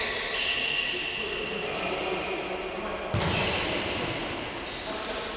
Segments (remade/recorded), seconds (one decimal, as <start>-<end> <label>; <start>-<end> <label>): 0.0-5.4 recorded